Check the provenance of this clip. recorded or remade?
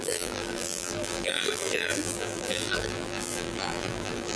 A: remade